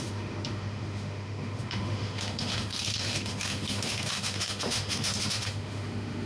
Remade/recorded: remade